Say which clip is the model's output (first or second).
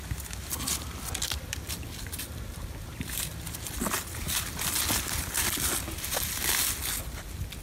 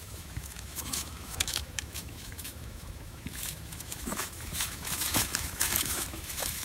second